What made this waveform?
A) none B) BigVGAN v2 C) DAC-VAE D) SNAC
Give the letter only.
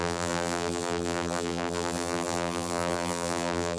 B